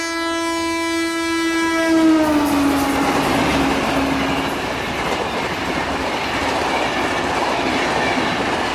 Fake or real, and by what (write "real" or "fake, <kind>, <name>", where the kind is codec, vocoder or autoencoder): real